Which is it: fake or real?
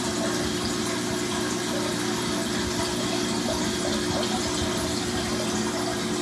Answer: real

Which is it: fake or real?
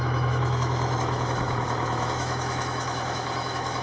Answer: fake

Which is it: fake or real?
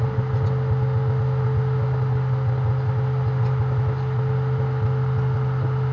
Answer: real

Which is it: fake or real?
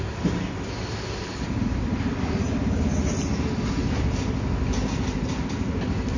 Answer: real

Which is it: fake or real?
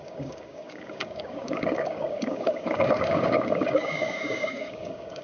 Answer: fake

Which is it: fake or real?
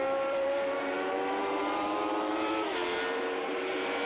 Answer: fake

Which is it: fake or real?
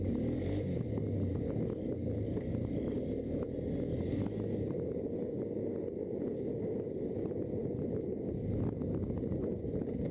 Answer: real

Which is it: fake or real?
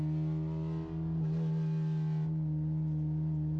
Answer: real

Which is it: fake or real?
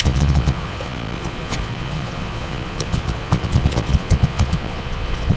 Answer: fake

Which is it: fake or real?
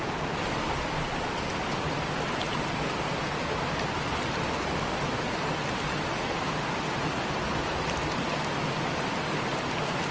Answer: real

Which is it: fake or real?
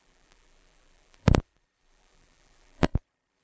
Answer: fake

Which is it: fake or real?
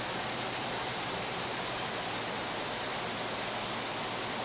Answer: real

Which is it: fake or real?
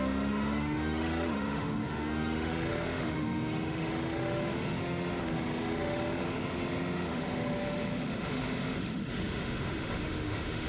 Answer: fake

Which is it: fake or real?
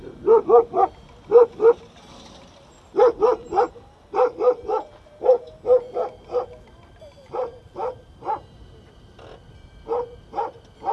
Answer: real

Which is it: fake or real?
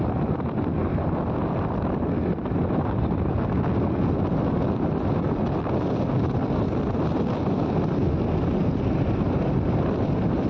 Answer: real